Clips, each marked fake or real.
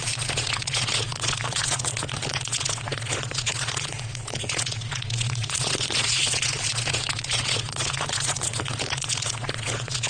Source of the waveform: fake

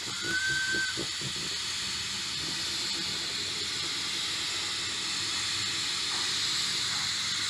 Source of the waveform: real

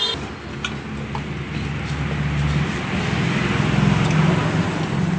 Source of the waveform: real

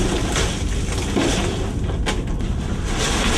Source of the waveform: real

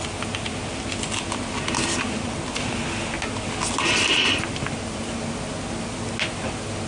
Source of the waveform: real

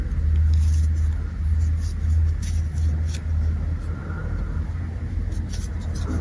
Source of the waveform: real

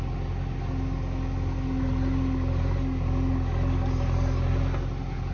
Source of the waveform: real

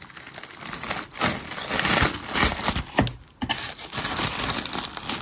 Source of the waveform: real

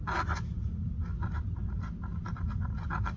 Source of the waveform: real